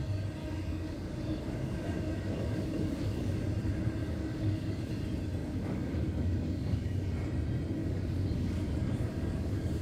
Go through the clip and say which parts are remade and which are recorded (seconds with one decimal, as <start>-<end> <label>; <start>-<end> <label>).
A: 0.0-0.4 recorded; 0.4-3.4 remade; 3.4-4.0 recorded; 4.0-4.9 remade; 4.9-5.4 recorded; 5.4-7.1 remade; 7.1-7.8 recorded; 7.8-9.8 remade